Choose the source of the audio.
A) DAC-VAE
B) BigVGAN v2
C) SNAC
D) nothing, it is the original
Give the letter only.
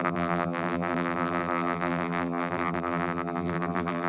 B